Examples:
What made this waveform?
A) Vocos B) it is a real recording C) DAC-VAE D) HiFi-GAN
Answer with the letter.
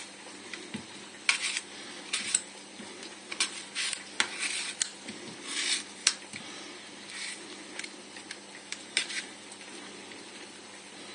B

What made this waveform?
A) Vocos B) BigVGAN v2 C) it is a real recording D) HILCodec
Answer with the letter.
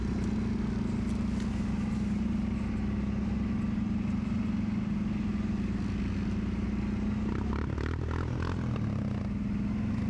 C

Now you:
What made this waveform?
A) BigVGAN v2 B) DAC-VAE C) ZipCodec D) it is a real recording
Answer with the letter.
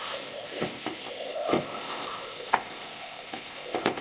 C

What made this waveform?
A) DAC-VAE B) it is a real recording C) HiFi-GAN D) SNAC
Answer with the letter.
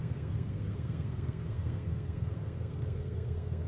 D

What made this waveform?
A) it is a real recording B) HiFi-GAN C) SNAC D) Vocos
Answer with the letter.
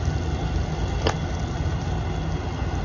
A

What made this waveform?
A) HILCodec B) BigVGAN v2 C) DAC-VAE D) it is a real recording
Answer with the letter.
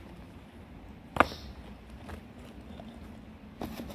D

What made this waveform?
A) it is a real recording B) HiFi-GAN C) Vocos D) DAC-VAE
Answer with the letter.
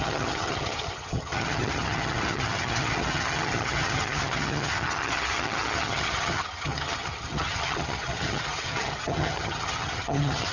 B